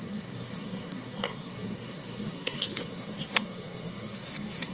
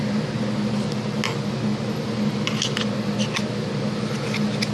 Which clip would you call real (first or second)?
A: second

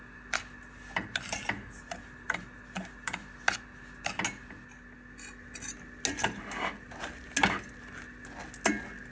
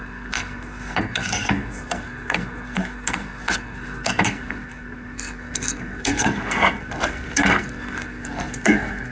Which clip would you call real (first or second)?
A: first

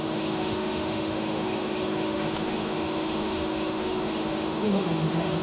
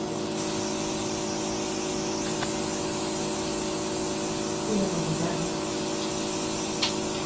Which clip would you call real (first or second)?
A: second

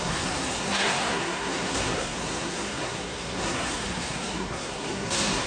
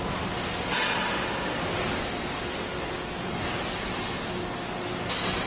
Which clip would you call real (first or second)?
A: second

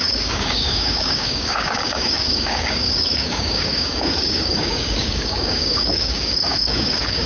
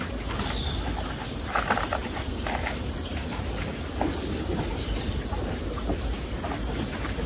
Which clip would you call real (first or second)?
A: second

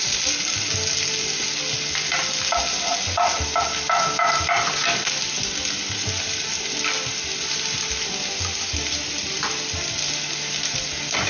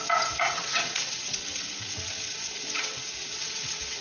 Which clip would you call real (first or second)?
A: first